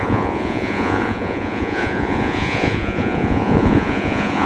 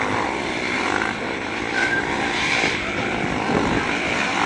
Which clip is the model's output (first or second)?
first